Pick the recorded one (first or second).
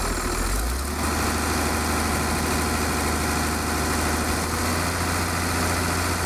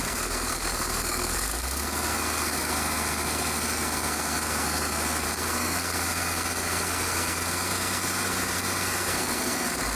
first